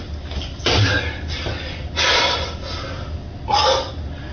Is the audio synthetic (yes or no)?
no